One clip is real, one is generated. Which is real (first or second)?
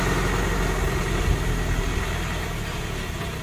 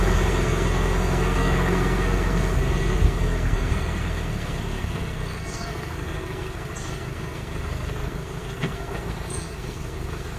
first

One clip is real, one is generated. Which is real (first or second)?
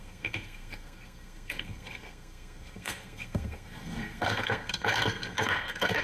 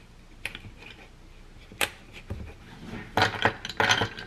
second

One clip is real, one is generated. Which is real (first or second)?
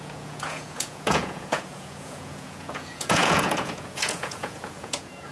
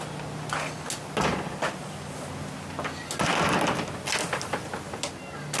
second